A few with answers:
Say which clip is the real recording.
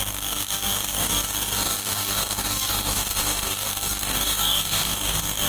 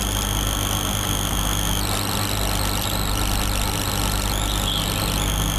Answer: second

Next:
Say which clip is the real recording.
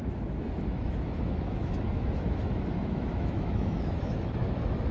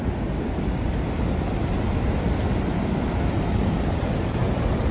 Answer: second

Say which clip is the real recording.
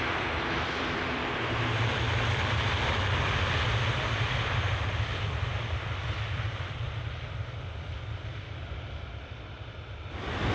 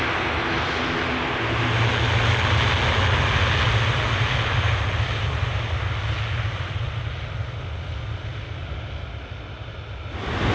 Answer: second